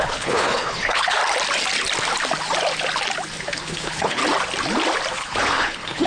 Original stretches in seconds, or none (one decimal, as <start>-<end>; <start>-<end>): 1.2-3.4; 4.2-5.1